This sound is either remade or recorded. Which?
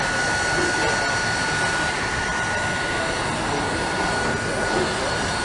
recorded